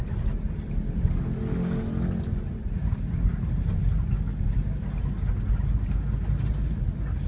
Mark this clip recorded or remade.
recorded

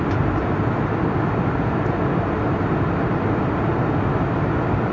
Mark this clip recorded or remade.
recorded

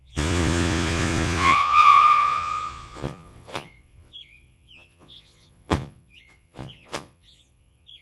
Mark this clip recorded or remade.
remade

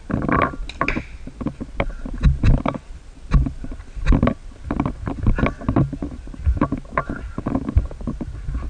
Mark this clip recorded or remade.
recorded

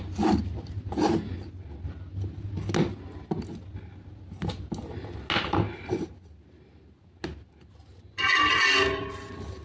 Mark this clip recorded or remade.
recorded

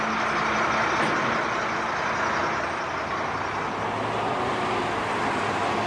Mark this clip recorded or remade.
recorded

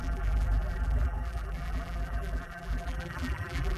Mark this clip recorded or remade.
remade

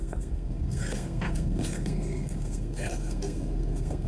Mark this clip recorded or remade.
remade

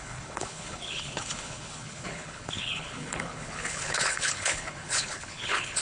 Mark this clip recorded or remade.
remade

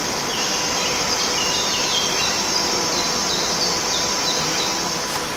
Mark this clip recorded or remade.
recorded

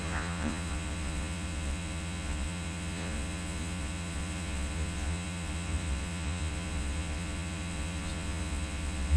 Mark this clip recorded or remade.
remade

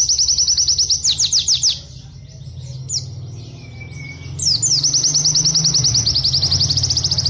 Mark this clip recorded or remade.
recorded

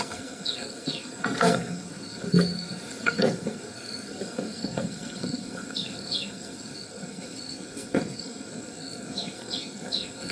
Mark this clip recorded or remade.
remade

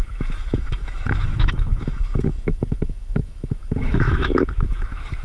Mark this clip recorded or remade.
remade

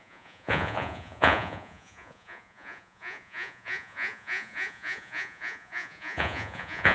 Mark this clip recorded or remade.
remade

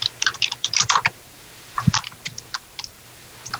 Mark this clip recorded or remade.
remade